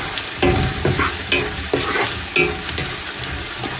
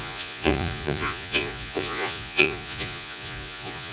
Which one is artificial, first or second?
second